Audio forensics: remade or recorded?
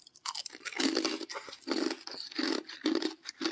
recorded